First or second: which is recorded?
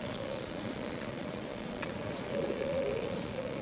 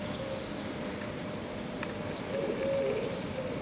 second